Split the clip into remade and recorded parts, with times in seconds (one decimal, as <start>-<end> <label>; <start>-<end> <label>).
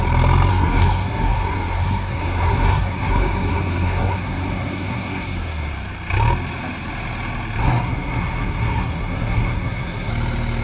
0.0-0.5 recorded; 0.5-5.7 remade; 5.7-7.6 recorded; 7.6-10.1 remade; 10.1-10.6 recorded